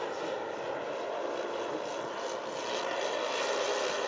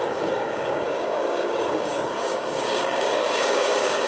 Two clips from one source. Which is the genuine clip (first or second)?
first